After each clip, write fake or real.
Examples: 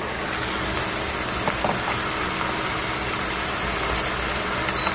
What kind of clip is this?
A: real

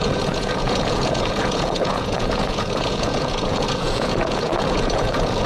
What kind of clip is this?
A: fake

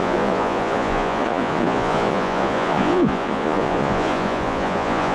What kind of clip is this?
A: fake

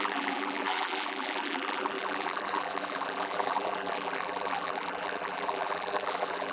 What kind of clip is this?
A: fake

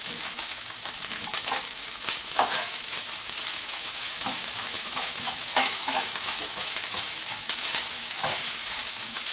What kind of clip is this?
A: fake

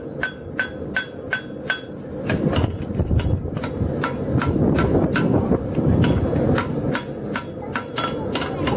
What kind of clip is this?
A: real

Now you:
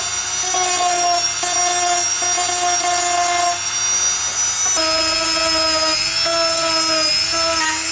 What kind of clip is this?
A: real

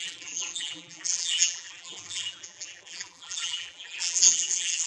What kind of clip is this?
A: fake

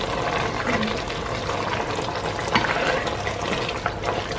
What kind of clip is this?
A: real